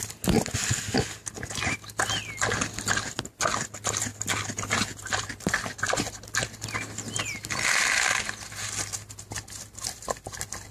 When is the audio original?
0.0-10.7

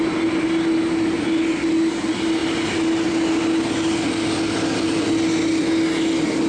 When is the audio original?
0.0-6.5

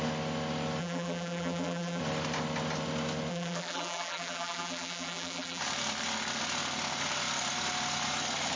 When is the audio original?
0.0-0.8; 2.0-3.3; 5.6-8.6

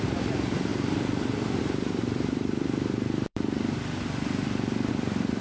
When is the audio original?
0.0-0.7; 1.6-2.0

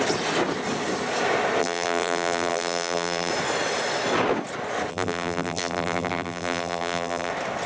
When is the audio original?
0.0-1.6; 3.3-4.9; 7.3-7.7

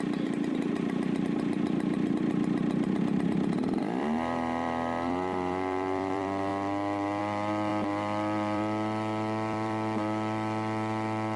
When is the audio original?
6.5-7.2

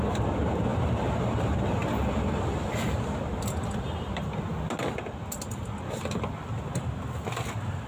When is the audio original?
4.5-7.9